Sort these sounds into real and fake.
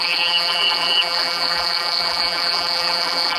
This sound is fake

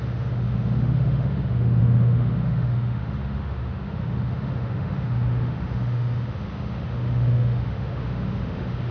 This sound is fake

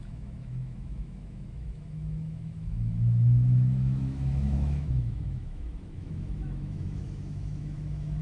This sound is fake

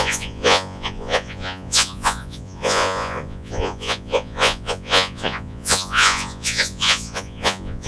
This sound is fake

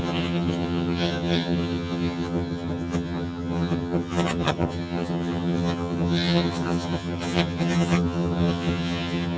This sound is fake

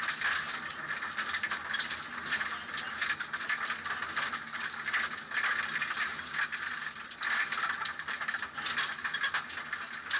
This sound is real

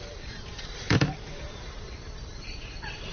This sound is fake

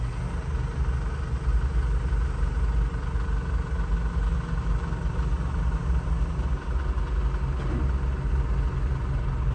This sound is real